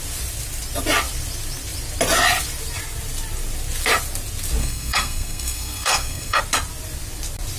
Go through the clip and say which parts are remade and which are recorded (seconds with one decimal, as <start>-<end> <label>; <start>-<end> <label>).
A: 0.0-4.6 recorded; 4.6-6.4 remade; 6.4-7.6 recorded